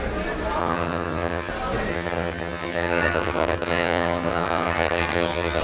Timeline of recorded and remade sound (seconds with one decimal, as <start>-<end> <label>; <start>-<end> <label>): 0.0-0.6 recorded; 0.6-1.5 remade; 1.5-1.9 recorded; 1.9-5.6 remade